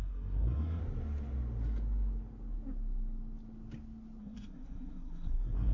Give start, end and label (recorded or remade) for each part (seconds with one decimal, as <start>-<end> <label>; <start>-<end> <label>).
0.0-0.8 remade; 0.8-4.2 recorded; 4.2-5.7 remade